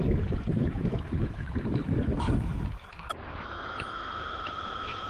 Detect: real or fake fake